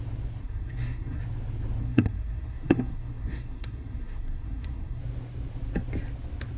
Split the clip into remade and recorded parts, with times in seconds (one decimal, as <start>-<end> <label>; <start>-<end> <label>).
0.0-0.4 recorded; 0.4-1.2 remade; 1.2-1.8 recorded; 1.8-5.0 remade; 5.0-6.6 recorded